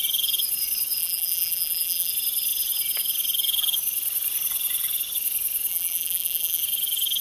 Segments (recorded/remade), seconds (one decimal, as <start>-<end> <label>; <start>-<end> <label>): 0.0-1.0 recorded; 1.0-2.1 remade; 2.1-5.7 recorded; 5.7-6.6 remade; 6.6-7.2 recorded